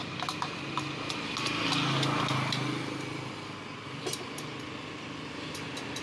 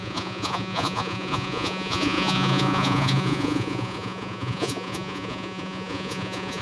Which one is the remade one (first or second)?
second